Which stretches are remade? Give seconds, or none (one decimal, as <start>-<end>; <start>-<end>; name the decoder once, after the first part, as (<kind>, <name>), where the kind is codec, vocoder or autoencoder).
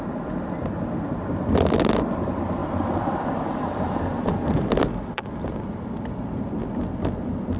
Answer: none